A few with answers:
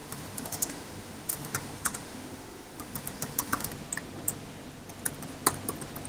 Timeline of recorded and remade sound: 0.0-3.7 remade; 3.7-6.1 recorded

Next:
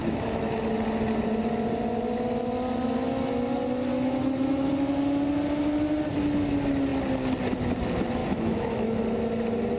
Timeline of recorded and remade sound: 0.0-0.6 remade; 0.6-3.9 recorded; 3.9-4.7 remade; 4.7-8.2 recorded; 8.2-9.0 remade; 9.0-9.8 recorded

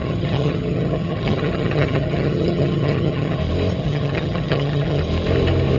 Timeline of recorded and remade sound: 0.0-3.4 remade; 3.4-3.8 recorded; 3.8-5.0 remade; 5.0-5.8 recorded

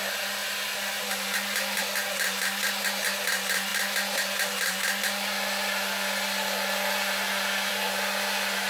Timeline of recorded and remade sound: 0.0-8.7 recorded

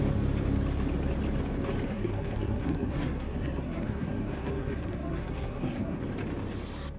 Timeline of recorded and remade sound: 0.0-1.9 recorded; 1.9-6.0 remade; 6.0-7.0 recorded

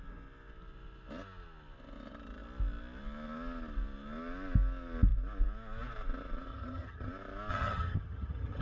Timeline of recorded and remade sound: 0.0-6.5 recorded; 6.5-7.1 remade; 7.1-7.5 recorded; 7.5-8.6 remade